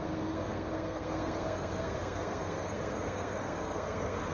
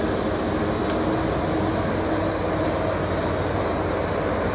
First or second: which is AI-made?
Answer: first